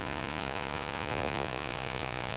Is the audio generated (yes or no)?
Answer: yes